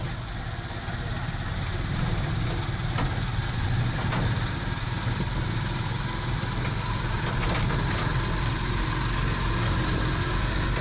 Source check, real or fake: real